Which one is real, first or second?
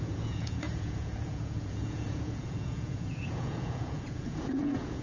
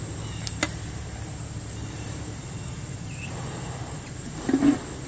second